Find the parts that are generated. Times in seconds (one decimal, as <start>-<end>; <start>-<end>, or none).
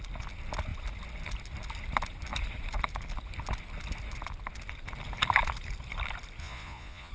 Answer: 6.4-7.1